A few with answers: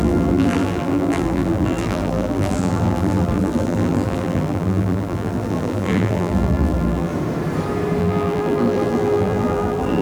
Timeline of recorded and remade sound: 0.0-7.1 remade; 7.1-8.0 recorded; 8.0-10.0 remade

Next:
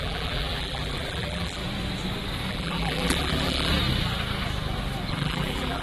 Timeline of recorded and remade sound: 0.0-1.6 remade; 1.6-2.5 recorded; 2.5-3.7 remade; 3.7-5.1 recorded; 5.1-5.8 remade

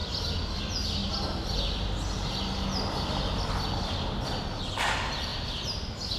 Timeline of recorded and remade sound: 0.0-6.2 recorded

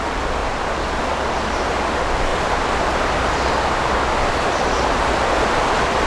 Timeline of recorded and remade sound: 0.0-0.4 recorded; 0.4-1.0 remade; 1.0-2.3 recorded; 2.3-4.3 remade; 4.3-6.1 recorded